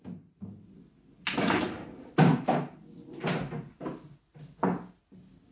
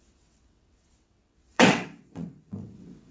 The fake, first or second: second